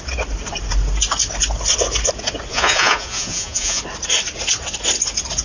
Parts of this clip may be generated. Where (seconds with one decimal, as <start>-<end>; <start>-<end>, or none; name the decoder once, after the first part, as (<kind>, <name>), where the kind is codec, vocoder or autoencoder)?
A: 2.5-3.8 (vocoder, Vocos)